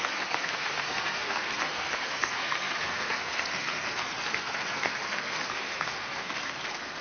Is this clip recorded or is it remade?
remade